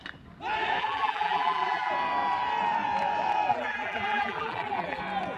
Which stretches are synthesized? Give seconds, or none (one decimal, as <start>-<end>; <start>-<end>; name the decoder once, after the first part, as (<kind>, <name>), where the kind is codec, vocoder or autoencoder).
0.8-1.9 (vocoder, BigVGAN v2); 3.5-5.0